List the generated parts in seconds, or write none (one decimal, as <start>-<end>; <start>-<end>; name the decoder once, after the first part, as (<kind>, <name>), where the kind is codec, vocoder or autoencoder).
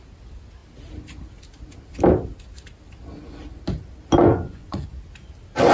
4.2-4.9 (vocoder, Vocos)